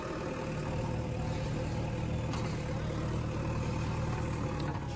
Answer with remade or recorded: recorded